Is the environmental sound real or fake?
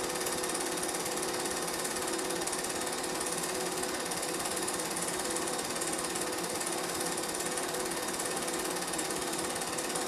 real